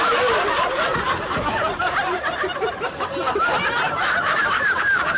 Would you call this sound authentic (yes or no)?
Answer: no